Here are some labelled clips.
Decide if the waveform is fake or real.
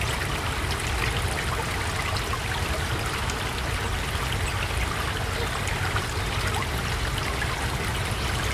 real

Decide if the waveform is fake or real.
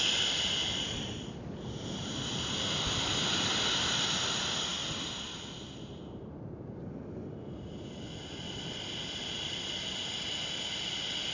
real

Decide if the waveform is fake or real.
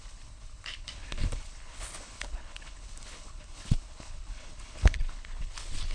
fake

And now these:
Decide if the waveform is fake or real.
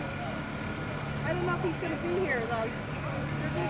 real